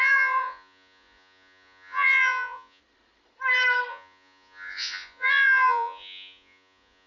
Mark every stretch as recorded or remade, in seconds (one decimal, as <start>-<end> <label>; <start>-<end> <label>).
0.0-2.8 remade; 2.8-3.9 recorded; 3.9-7.1 remade